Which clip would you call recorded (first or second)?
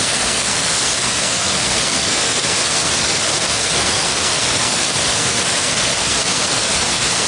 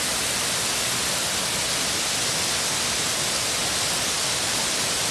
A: second